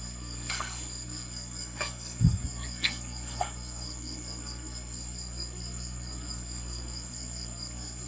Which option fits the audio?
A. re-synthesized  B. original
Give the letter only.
A